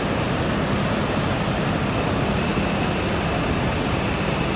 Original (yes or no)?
yes